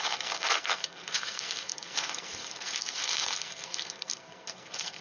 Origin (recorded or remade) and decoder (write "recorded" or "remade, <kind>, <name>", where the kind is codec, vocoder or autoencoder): remade, codec, SNAC